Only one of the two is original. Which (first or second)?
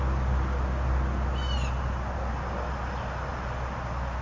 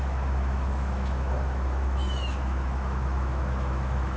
first